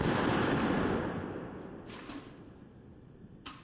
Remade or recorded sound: remade